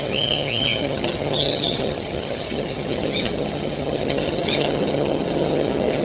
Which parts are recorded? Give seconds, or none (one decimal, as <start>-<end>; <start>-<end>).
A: none